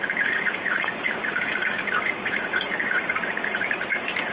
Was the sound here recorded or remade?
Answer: remade